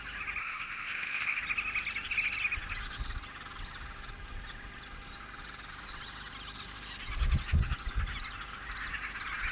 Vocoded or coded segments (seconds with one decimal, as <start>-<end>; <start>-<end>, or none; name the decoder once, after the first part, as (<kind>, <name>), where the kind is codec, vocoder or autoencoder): 0.4-1.4 (codec, ZipCodec)